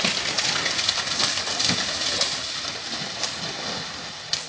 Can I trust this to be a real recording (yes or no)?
yes